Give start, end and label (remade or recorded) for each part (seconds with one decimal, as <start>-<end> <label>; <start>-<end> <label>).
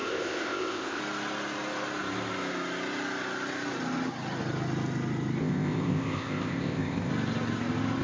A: 0.0-1.0 remade; 1.0-5.4 recorded; 5.4-7.1 remade; 7.1-8.0 recorded